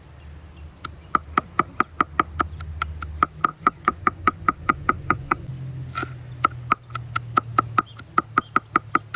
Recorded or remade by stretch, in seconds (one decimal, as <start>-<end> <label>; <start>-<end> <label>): 0.0-3.5 recorded; 3.5-5.5 remade; 5.5-9.2 recorded